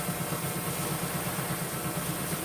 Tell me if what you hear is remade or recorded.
remade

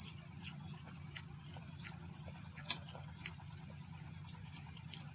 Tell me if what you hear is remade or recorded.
recorded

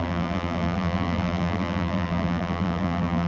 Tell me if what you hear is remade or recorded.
remade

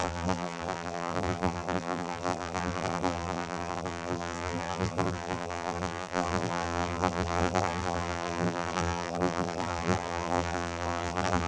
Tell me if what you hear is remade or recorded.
remade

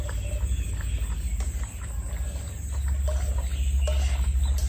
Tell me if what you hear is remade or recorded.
recorded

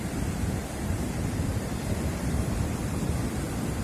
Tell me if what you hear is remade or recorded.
remade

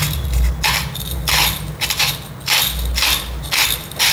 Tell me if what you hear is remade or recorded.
recorded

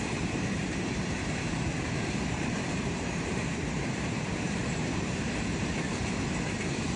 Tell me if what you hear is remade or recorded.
remade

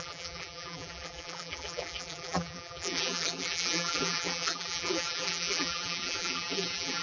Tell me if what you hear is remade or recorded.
remade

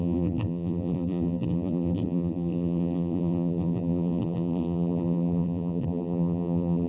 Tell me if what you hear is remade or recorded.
remade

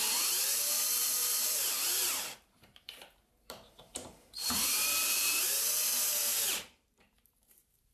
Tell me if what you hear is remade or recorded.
remade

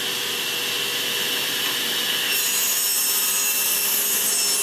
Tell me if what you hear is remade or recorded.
recorded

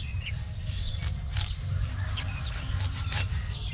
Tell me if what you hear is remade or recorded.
recorded